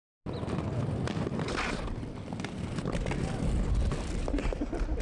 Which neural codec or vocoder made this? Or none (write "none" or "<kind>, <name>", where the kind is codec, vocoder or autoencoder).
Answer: none